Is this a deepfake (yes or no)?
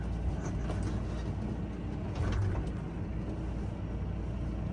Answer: no